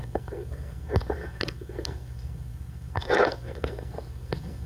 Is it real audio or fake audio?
fake